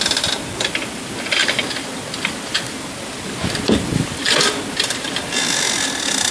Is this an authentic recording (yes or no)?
yes